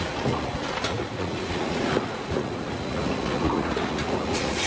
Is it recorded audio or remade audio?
remade